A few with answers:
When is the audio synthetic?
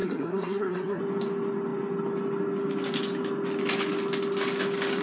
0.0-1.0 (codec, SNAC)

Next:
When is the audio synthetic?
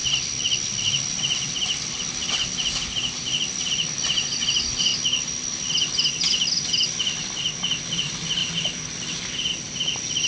none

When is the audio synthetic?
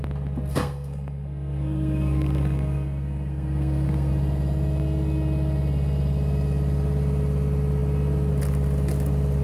0.5-4.1 (codec, SNAC)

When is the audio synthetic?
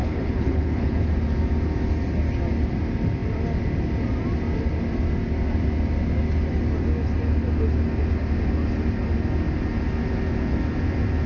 0.0-1.1 (codec, HILCodec)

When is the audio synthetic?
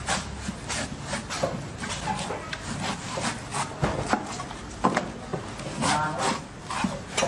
none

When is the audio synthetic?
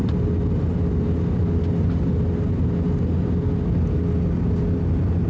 none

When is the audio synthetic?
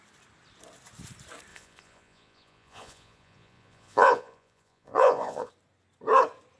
1.5-5.5 (vocoder, Vocos)